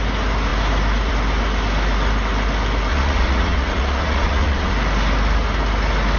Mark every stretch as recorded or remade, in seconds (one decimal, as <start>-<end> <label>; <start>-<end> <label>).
0.0-2.9 recorded; 2.9-4.7 remade; 4.7-6.2 recorded